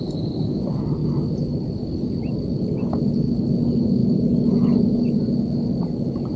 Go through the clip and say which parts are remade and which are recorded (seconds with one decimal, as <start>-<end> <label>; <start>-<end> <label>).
0.0-6.4 recorded